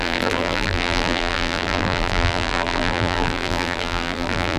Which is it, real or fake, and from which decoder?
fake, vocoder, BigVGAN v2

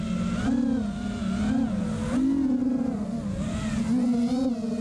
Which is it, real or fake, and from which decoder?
real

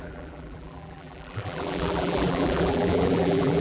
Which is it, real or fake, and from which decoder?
fake, vocoder, BigVGAN v2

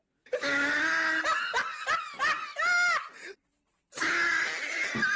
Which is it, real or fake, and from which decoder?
real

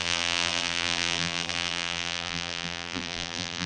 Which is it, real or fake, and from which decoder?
fake, vocoder, BigVGAN v2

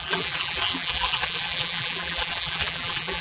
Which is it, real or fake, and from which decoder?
fake, vocoder, BigVGAN v2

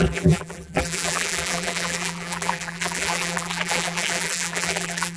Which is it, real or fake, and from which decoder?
fake, vocoder, BigVGAN v2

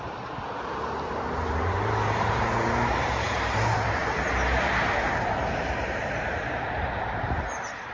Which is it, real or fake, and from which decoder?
fake, vocoder, BigVGAN v2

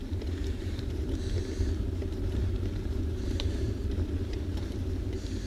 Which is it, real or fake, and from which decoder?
fake, vocoder, BigVGAN v2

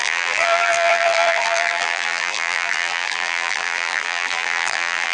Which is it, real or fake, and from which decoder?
fake, vocoder, BigVGAN v2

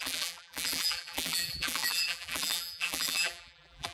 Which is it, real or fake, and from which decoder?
fake, vocoder, BigVGAN v2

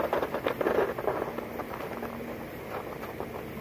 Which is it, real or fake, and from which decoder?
real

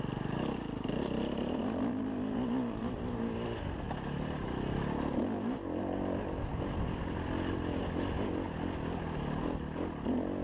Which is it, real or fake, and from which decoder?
real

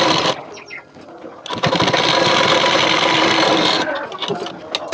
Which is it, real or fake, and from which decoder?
real